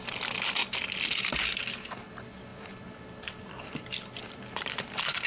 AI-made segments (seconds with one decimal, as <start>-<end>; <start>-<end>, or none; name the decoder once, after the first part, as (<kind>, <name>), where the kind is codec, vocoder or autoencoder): 2.5-4.8 (vocoder, BigVGAN v2)